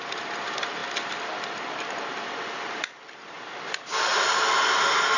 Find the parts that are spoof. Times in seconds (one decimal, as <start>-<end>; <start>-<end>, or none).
0.0-0.8; 2.1-4.1

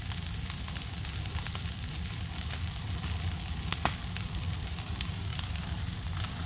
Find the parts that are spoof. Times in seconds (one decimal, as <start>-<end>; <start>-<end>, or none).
none

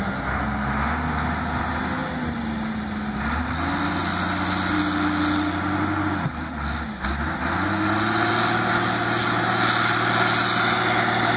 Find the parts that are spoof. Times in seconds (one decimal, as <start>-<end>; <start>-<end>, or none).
none

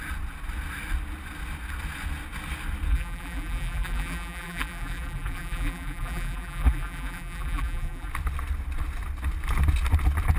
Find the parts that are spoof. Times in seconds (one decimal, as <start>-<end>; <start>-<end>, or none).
2.9-8.1

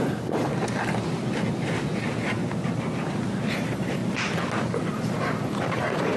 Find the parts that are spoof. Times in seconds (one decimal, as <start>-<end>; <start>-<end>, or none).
0.0-0.5; 3.5-4.0; 4.9-6.2

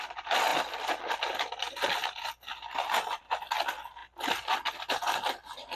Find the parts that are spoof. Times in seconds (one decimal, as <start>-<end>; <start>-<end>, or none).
none